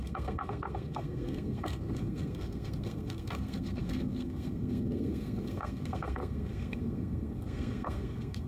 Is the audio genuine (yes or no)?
no